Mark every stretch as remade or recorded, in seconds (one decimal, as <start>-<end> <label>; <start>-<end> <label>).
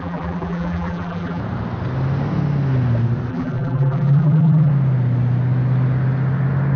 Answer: 0.0-1.4 remade; 1.4-3.3 recorded; 3.3-4.7 remade; 4.7-6.8 recorded